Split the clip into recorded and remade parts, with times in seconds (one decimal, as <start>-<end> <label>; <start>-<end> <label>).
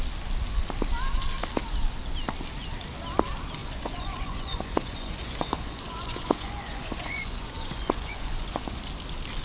0.0-3.6 recorded; 3.6-8.8 remade; 8.8-9.4 recorded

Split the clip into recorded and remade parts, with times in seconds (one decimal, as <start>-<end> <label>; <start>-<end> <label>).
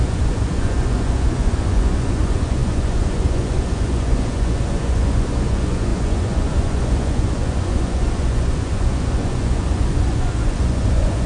0.0-11.3 remade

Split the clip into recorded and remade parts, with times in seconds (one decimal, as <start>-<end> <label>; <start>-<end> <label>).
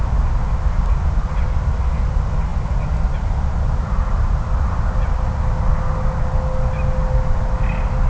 0.0-8.1 recorded